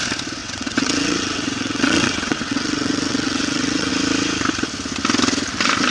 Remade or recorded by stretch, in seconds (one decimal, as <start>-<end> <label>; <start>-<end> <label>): 0.0-0.4 recorded; 0.4-3.9 remade; 3.9-5.9 recorded